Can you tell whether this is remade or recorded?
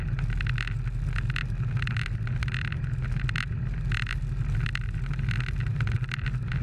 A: recorded